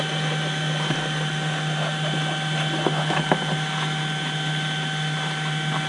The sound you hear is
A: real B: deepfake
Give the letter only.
A